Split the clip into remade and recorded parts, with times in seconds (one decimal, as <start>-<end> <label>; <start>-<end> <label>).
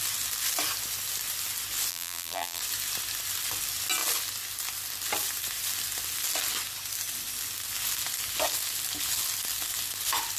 0.0-1.9 recorded; 1.9-2.6 remade; 2.6-10.4 recorded